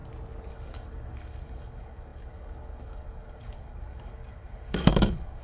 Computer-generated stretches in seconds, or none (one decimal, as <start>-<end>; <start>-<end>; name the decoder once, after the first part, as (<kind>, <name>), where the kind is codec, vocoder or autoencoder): 0.5-5.4 (codec, DAC)